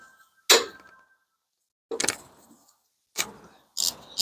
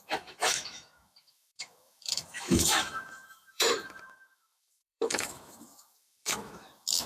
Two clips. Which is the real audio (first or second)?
first